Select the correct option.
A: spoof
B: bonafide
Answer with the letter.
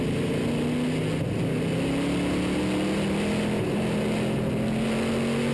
B